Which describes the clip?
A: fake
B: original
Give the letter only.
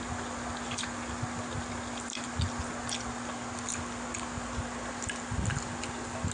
B